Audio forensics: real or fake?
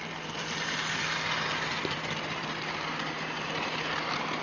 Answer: real